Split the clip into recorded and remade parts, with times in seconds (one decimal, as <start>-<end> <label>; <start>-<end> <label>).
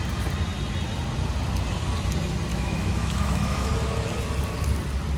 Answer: 0.0-2.5 recorded; 2.5-3.7 remade; 3.7-5.2 recorded